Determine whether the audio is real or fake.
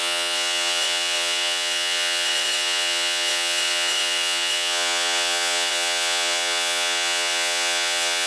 fake